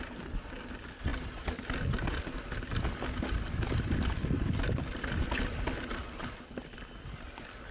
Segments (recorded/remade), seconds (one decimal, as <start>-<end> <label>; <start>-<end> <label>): 0.0-7.7 recorded